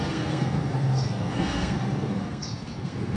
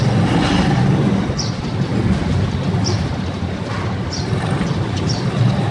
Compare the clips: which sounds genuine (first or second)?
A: second